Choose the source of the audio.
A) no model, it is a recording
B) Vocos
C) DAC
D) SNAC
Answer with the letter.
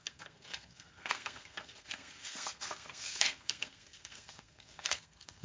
D